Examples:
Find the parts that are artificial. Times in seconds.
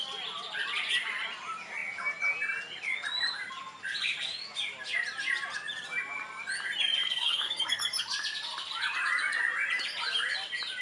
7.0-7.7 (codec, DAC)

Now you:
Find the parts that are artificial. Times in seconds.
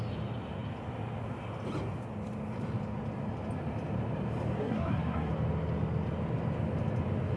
4.6-5.3 (codec, SNAC)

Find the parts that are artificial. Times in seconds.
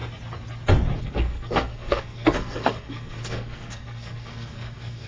1.0-5.1 (codec, SNAC)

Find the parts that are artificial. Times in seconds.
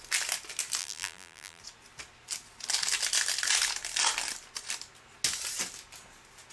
0.8-1.6 (vocoder, BigVGAN v2)